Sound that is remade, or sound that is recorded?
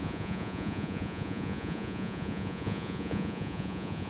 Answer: remade